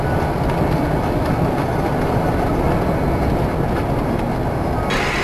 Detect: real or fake real